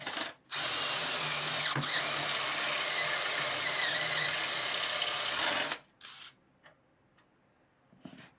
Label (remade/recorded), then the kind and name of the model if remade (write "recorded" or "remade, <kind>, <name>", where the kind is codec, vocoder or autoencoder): recorded